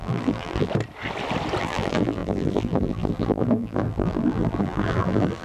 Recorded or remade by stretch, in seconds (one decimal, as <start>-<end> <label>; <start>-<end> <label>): 0.0-0.7 remade; 0.7-1.6 recorded; 1.6-5.4 remade